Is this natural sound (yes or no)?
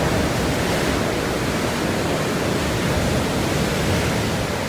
yes